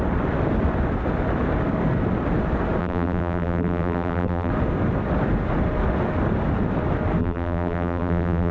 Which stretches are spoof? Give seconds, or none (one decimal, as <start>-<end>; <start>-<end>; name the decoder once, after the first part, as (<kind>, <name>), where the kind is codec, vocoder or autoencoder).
2.8-4.5 (vocoder, BigVGAN v2); 7.2-8.5